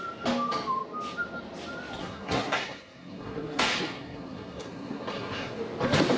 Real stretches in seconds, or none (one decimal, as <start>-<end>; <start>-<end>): 0.0-2.0; 5.6-6.2